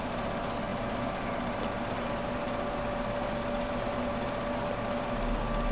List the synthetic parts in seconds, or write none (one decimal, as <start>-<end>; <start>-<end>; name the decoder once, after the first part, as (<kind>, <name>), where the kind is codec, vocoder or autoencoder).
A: none